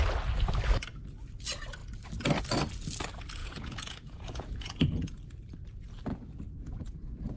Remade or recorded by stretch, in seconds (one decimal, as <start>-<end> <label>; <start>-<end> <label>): 0.0-3.4 recorded; 3.4-5.2 remade; 5.2-6.1 recorded; 6.1-7.4 remade